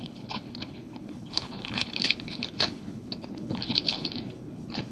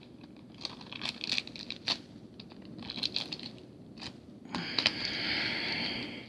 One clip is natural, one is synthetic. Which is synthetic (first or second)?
first